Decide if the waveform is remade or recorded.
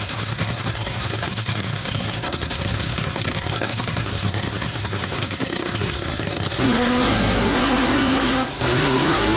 remade